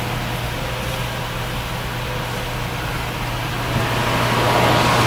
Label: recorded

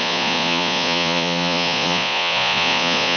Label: remade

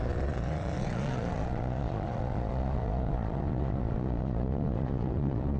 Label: remade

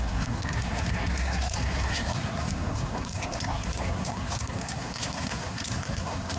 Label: remade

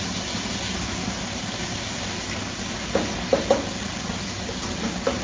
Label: recorded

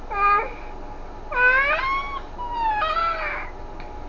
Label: recorded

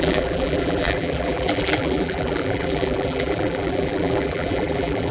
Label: remade